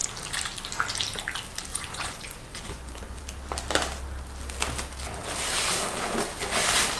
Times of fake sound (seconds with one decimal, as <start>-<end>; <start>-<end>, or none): 1.7-3.2